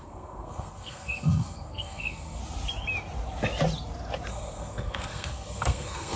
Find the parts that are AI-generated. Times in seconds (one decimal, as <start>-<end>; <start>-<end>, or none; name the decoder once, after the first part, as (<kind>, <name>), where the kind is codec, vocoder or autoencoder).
0.0-2.4 (codec, SNAC); 4.3-6.2

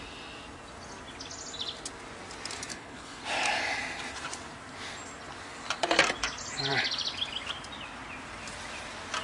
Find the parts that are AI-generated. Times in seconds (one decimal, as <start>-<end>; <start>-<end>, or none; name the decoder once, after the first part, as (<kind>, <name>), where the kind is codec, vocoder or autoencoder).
2.7-3.2 (codec, HILCodec)